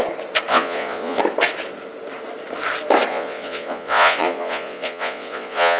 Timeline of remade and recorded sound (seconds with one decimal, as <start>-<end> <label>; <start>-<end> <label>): 0.0-0.5 recorded; 0.5-1.2 remade; 1.2-3.1 recorded; 3.1-5.8 remade